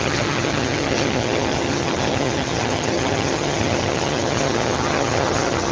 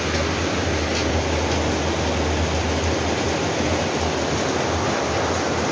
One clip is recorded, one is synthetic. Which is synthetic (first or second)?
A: first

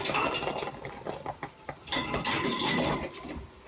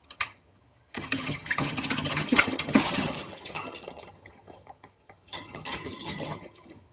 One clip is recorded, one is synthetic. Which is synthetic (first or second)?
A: second